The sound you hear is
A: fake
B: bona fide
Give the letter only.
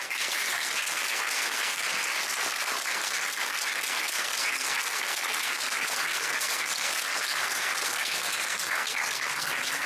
A